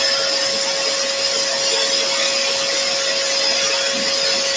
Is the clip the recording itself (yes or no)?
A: yes